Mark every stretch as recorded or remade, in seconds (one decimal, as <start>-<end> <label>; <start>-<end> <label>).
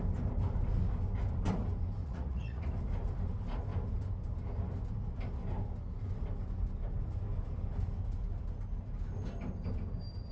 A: 0.0-2.0 recorded; 2.0-2.7 remade; 2.7-10.3 recorded